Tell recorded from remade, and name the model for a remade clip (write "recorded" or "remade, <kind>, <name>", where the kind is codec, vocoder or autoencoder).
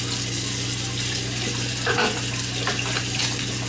recorded